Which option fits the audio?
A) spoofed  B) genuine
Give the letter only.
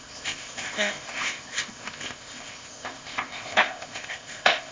A